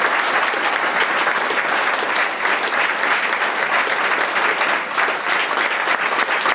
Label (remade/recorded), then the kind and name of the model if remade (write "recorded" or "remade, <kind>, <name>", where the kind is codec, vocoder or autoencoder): recorded